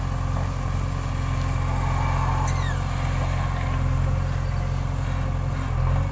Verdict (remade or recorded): recorded